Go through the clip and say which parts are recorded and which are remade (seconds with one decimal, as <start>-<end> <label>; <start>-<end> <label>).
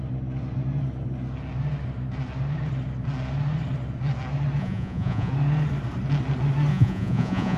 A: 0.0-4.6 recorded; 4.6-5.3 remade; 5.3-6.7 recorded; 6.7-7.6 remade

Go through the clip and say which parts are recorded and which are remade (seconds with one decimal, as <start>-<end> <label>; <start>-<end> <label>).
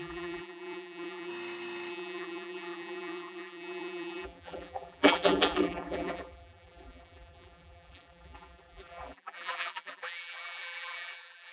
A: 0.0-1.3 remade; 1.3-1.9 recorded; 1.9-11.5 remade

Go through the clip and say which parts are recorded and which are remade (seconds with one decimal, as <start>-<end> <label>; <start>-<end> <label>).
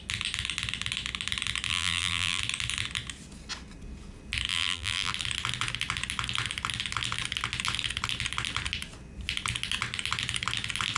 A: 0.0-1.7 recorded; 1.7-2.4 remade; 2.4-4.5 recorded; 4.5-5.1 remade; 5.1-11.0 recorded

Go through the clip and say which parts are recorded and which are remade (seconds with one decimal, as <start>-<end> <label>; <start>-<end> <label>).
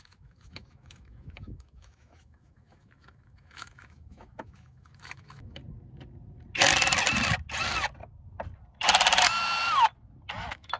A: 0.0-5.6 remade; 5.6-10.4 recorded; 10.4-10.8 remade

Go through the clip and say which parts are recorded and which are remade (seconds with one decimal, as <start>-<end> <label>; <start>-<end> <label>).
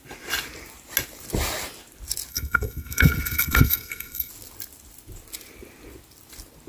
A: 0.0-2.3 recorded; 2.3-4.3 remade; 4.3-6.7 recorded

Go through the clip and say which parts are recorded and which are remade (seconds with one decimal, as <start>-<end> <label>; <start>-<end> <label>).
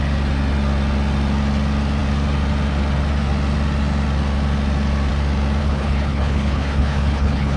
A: 0.0-5.6 recorded; 5.6-7.6 remade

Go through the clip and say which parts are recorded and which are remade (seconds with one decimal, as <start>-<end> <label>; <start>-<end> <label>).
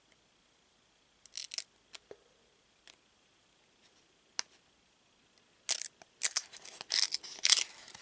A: 0.0-8.0 recorded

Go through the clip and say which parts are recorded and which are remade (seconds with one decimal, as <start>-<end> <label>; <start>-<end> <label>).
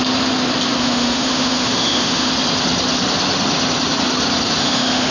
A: 0.0-0.8 recorded; 0.8-2.3 remade; 2.3-4.6 recorded; 4.6-5.1 remade